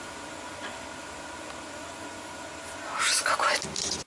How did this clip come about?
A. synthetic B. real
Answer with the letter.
B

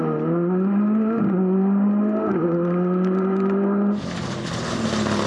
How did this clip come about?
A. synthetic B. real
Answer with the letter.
B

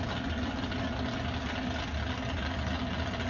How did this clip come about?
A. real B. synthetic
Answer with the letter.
A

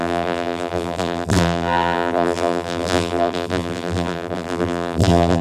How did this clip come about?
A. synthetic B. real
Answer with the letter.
A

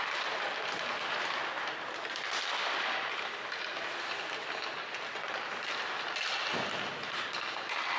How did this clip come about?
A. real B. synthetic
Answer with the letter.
A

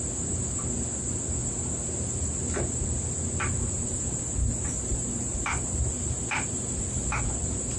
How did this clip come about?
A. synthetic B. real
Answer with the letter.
B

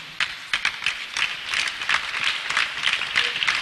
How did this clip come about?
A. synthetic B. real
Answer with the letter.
B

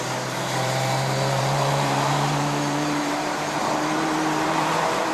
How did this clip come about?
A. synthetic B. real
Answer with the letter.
A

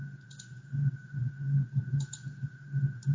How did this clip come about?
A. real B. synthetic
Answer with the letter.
B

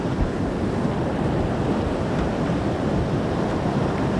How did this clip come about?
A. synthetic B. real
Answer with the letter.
B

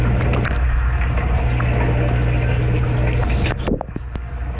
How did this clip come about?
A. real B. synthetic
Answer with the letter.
A